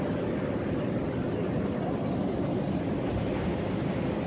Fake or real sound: real